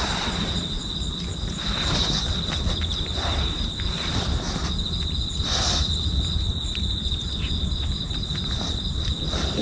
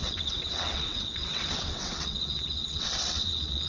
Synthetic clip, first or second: second